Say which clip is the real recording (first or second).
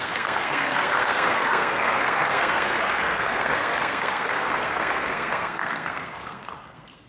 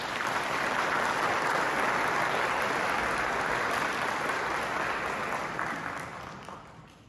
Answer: second